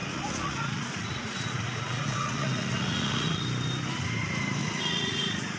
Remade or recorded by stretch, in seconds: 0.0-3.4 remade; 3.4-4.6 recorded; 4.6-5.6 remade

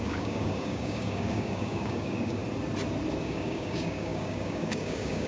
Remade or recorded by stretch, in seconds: 0.0-2.4 remade; 2.4-3.2 recorded; 3.2-5.3 remade

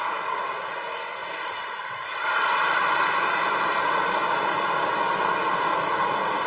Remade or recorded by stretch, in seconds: 0.0-1.2 recorded; 1.2-2.9 remade; 2.9-6.5 recorded